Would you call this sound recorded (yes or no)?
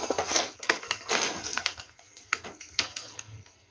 no